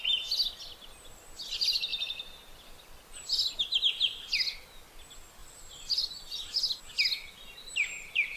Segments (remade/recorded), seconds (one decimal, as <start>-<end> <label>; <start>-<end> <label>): 0.0-8.4 recorded